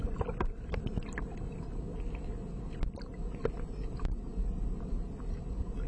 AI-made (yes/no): no